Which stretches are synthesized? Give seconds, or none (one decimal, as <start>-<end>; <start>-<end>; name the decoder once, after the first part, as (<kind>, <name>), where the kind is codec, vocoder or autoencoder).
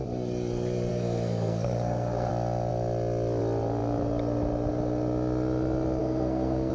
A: 0.9-2.3 (codec, SNAC); 6.0-6.7